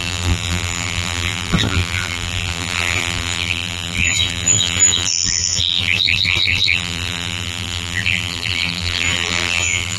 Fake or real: fake